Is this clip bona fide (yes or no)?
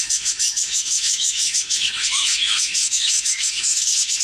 no